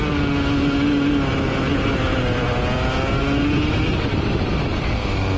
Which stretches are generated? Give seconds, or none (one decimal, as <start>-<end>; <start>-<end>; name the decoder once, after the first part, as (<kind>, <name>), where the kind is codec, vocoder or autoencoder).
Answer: 4.7-5.4 (vocoder, BigVGAN v2)